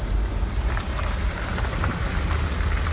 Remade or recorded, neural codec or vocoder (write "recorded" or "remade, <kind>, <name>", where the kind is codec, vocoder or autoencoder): recorded